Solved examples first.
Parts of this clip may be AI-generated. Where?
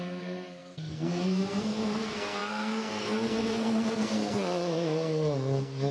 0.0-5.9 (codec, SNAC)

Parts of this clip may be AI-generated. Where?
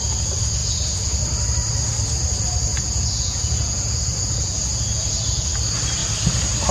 0.6-1.3 (vocoder, Vocos); 2.7-5.5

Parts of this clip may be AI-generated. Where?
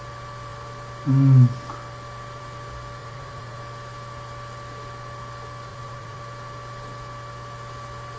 3.0-3.6 (vocoder, Vocos); 5.7-6.2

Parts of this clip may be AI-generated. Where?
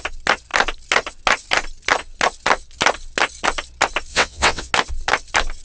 4.1-4.7 (vocoder, WaveNeXt)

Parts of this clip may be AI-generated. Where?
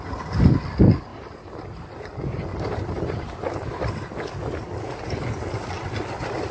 2.5-3.2 (vocoder, BigVGAN v2)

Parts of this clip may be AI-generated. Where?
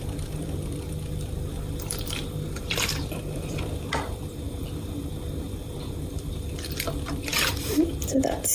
0.0-8.5 (vocoder, BigVGAN v2)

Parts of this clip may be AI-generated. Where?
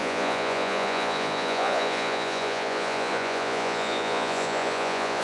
0.0-5.2 (vocoder, Vocos)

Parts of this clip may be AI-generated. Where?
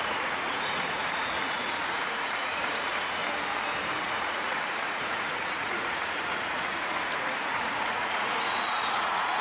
0.0-3.2 (vocoder, Vocos); 3.9-9.4